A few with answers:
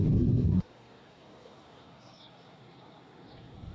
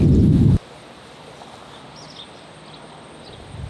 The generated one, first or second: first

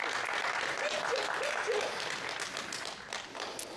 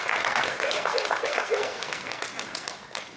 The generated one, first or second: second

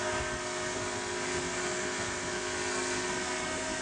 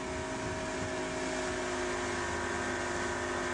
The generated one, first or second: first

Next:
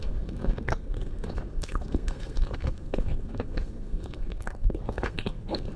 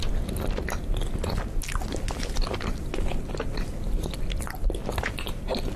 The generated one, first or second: first